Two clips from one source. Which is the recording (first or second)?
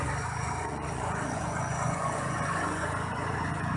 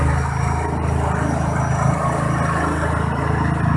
second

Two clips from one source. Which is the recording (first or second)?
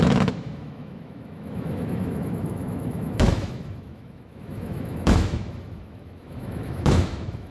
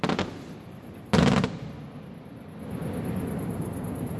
second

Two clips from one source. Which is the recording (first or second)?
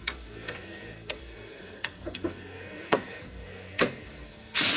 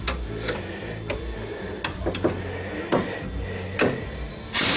second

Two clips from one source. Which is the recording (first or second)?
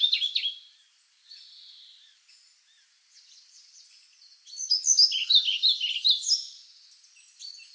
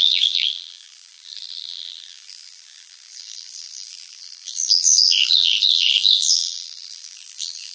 first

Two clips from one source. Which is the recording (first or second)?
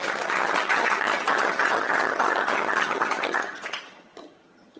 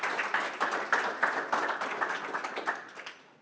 second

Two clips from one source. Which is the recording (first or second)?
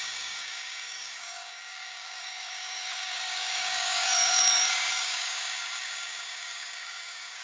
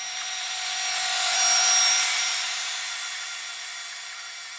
second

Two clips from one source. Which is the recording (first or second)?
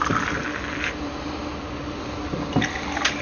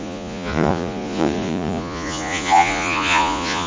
first